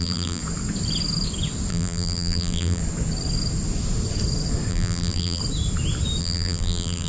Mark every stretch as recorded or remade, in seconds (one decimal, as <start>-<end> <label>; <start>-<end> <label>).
0.0-0.4 remade; 0.4-1.7 recorded; 1.7-2.8 remade; 2.8-4.7 recorded; 4.7-5.4 remade; 5.4-6.2 recorded; 6.2-7.1 remade